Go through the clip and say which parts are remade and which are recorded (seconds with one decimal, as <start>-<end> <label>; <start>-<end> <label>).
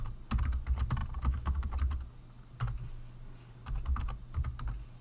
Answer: 0.0-5.0 recorded